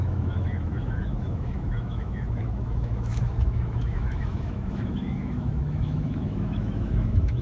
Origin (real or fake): fake